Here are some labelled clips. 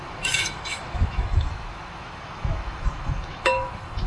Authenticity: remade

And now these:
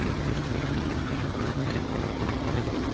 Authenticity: remade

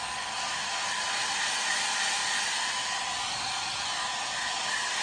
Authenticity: recorded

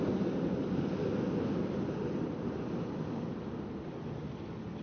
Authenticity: recorded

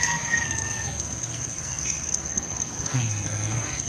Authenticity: remade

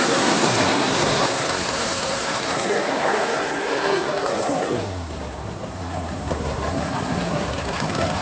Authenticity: remade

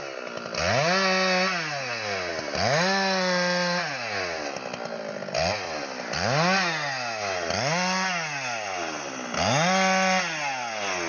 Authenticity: recorded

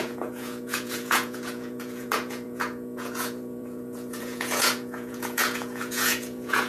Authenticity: remade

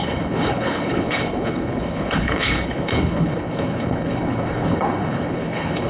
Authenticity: remade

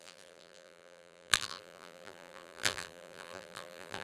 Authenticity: remade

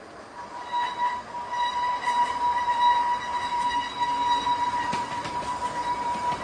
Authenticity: remade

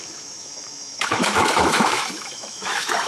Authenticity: remade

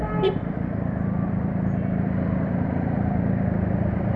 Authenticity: recorded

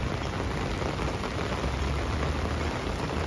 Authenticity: recorded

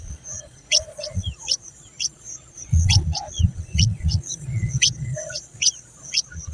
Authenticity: remade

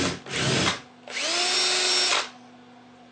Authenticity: recorded